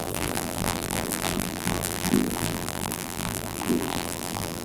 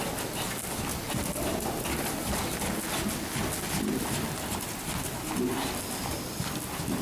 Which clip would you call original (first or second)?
second